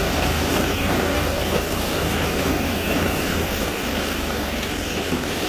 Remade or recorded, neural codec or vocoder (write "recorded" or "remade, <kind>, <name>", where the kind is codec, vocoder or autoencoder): remade, codec, DAC